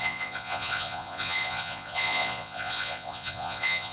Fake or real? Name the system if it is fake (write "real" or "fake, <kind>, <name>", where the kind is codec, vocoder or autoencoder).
fake, vocoder, Vocos